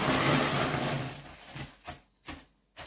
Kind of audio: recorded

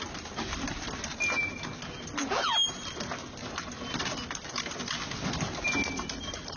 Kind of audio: recorded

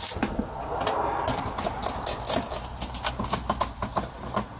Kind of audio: recorded